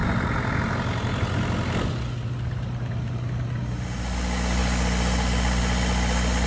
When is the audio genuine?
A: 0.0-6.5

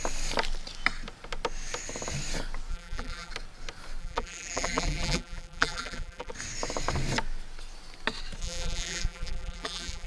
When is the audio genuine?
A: 0.0-2.7; 3.3-4.0; 6.3-8.4

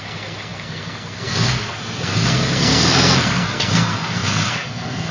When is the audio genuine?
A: none

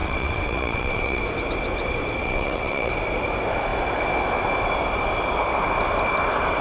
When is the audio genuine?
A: 1.2-2.2; 2.9-6.6

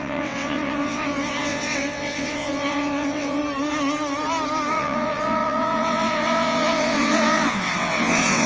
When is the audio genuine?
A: 3.4-4.7

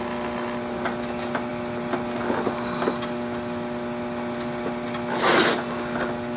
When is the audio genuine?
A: 0.0-6.4